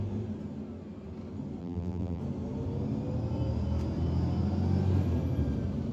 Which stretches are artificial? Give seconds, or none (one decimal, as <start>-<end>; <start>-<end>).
1.6-2.2